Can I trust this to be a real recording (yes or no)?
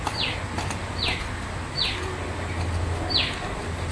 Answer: yes